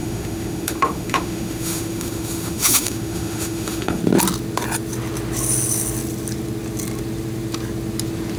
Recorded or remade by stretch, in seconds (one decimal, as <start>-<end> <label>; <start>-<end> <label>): 0.0-4.0 remade; 4.0-8.4 recorded